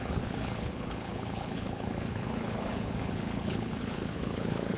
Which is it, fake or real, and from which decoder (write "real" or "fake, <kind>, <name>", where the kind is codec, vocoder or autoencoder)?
fake, codec, HILCodec